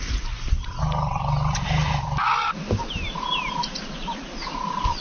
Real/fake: real